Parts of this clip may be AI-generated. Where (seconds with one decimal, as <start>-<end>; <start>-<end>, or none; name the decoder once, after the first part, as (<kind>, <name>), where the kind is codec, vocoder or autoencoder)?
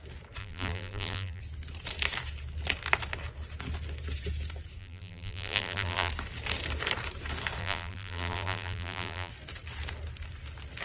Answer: 0.4-1.4 (vocoder, BigVGAN v2); 4.8-6.1; 7.6-9.3